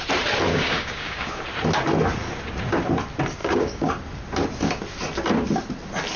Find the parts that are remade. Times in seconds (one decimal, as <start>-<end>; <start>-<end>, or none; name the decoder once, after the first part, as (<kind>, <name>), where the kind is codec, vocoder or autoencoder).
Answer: 0.5-1.4 (codec, DAC); 3.4-3.9